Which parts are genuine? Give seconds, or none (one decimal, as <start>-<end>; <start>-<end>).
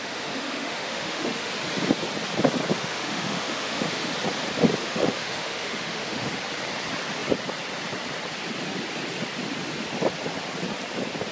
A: 1.5-2.8; 4.1-4.8; 6.3-11.3